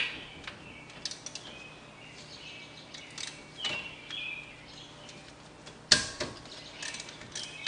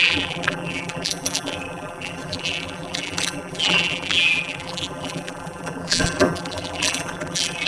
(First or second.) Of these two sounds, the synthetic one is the second